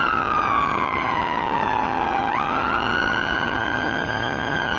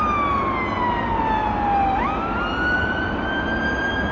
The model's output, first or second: first